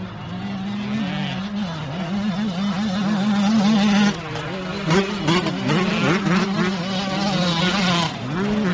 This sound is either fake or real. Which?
real